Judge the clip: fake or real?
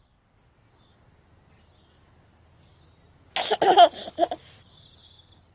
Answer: real